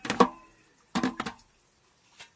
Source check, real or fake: real